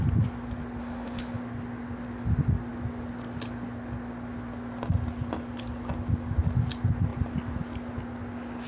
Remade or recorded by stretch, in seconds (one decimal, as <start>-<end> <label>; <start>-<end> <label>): 0.0-0.8 recorded; 0.8-1.4 remade; 1.4-8.7 recorded